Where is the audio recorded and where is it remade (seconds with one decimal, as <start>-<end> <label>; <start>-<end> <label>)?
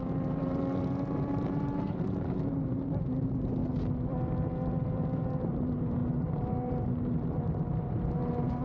0.0-3.6 remade; 3.6-4.7 recorded; 4.7-8.6 remade